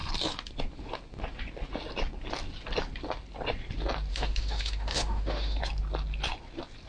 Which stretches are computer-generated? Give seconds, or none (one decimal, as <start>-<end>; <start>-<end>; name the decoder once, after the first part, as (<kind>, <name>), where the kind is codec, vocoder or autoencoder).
4.1-5.6 (autoencoder, DAC-VAE)